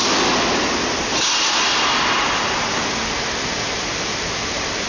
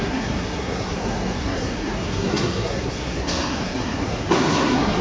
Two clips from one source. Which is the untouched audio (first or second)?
first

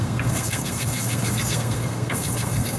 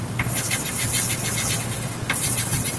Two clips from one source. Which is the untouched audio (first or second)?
second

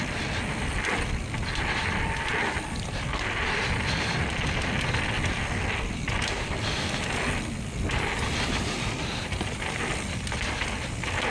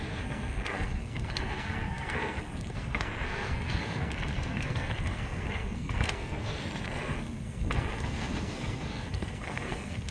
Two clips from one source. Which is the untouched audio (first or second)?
first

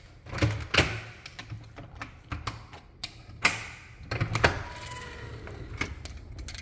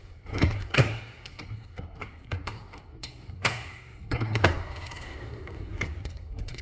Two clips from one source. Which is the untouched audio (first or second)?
first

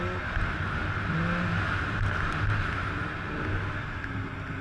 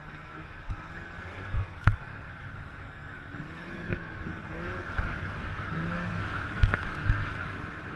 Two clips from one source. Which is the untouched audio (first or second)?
first